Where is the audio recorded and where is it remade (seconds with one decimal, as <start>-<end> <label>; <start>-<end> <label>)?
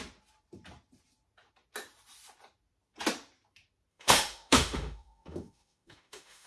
0.0-3.9 recorded; 3.9-6.5 remade